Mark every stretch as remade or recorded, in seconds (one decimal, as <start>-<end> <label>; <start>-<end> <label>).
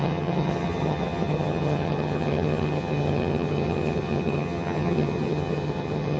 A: 0.0-6.2 remade